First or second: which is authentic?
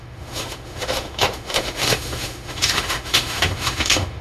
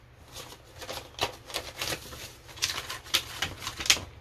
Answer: second